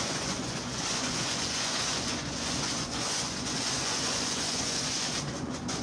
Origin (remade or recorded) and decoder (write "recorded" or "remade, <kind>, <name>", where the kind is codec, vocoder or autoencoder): remade, vocoder, Vocos